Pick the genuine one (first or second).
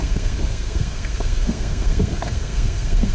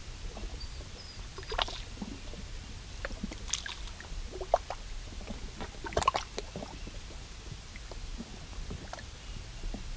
second